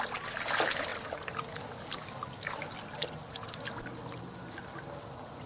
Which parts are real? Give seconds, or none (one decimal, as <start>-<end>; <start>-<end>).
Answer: 0.0-5.5

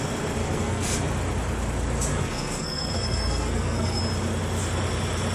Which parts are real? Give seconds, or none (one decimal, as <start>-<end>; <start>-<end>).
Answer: 0.0-0.4; 1.1-2.1; 4.0-5.3

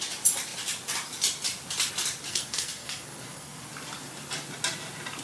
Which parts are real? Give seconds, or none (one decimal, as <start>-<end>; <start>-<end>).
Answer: 0.0-2.3; 3.6-5.2